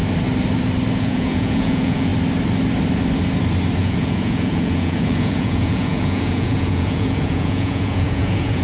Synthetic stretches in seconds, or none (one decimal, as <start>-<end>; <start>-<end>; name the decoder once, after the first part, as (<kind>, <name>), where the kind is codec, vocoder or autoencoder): 1.0-2.1 (vocoder, Vocos); 3.8-8.6